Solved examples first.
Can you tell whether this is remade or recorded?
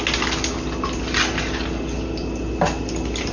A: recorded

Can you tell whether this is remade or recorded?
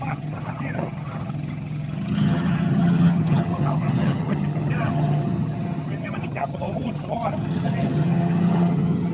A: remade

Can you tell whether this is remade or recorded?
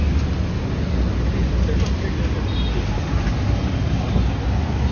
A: recorded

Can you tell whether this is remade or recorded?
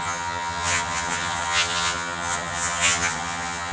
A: remade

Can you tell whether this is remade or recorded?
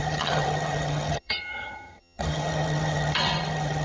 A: remade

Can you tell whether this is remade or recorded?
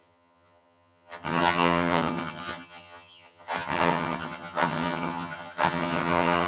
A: remade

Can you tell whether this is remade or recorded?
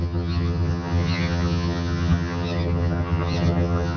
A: remade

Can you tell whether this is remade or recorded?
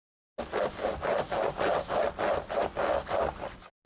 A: recorded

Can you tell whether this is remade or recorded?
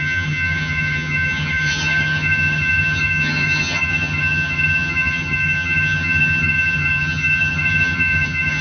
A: remade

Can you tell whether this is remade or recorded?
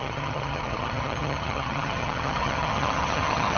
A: remade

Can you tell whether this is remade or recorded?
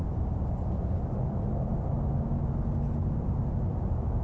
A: recorded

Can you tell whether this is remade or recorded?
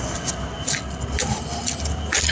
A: recorded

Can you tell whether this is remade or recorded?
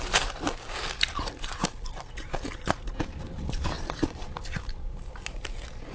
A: recorded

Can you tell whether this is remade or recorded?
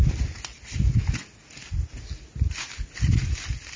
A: recorded